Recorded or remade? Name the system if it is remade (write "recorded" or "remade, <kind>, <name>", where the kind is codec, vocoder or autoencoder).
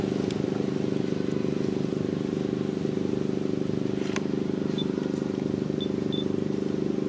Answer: recorded